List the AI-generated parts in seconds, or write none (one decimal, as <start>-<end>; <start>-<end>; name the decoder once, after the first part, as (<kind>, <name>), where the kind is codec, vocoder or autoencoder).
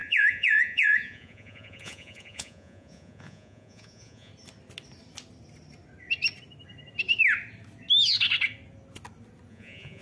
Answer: 0.0-4.3 (vocoder, Vocos); 9.5-10.0